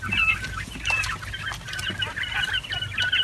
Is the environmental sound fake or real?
real